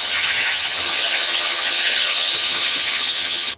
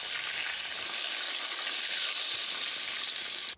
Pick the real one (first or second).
second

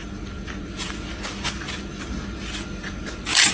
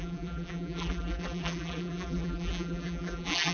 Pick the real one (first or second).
first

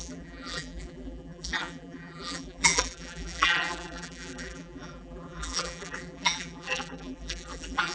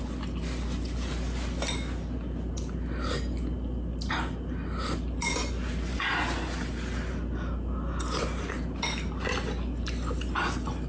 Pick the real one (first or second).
second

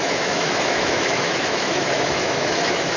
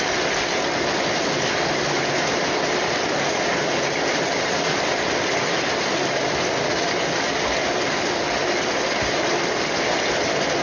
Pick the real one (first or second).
second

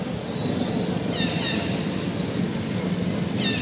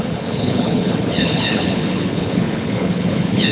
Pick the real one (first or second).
first